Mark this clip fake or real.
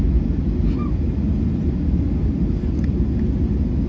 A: real